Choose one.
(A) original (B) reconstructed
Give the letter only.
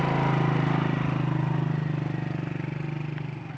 A